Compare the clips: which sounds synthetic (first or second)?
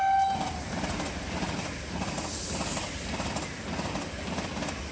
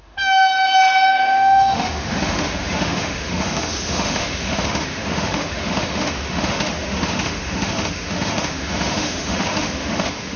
second